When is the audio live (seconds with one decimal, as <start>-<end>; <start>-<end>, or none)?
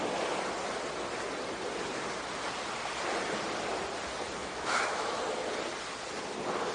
0.0-4.4; 5.2-6.7